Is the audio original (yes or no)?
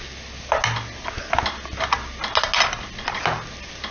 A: yes